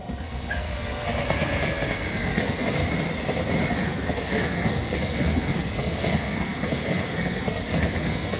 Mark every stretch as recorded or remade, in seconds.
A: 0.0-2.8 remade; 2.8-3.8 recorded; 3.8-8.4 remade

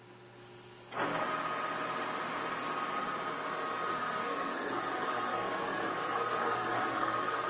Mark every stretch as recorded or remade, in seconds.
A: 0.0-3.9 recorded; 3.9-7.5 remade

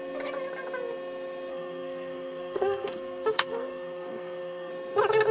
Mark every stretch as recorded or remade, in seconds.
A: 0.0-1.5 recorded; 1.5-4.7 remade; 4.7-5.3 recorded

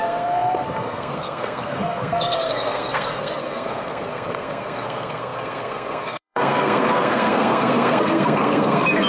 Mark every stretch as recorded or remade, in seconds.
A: 0.0-9.1 remade

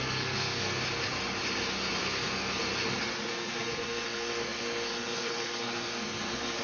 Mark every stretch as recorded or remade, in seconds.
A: 0.0-0.8 remade; 0.8-2.0 recorded; 2.0-2.6 remade; 2.6-3.3 recorded; 3.3-6.6 remade

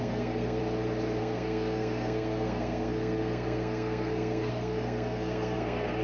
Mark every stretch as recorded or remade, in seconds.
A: 0.0-0.6 remade; 0.6-1.2 recorded; 1.2-6.0 remade

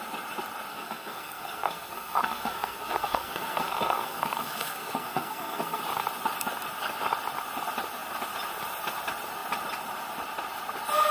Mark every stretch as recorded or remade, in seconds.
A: 0.0-0.7 recorded; 0.7-5.8 remade; 5.8-11.1 recorded